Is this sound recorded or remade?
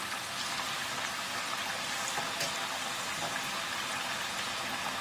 recorded